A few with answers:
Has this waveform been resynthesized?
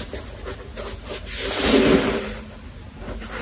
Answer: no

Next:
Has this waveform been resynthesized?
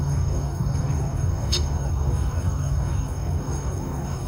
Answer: yes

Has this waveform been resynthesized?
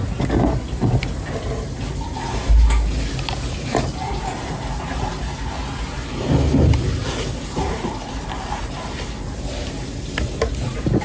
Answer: no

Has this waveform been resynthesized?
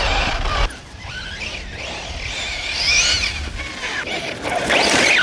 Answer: no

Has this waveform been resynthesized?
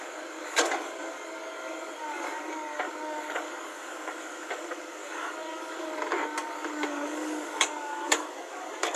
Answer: yes